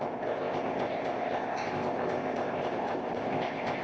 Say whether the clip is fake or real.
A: fake